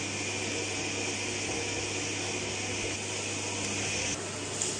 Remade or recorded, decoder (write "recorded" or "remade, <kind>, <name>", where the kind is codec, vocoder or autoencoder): recorded